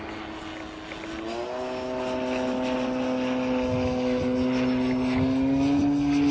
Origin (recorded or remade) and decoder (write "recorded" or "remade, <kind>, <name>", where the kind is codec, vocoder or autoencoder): recorded